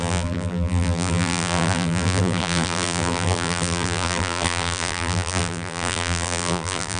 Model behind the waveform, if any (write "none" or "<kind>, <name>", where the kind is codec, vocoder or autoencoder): vocoder, BigVGAN v2